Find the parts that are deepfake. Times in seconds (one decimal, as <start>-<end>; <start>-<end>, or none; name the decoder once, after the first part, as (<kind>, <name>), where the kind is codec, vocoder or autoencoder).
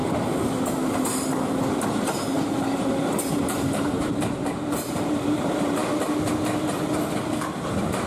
1.8-5.8 (vocoder, BigVGAN v2)